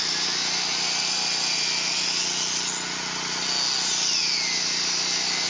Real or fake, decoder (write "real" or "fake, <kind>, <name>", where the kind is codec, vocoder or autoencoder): real